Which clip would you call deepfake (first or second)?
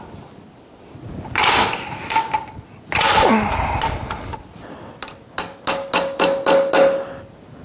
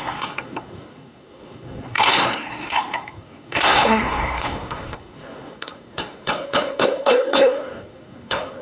second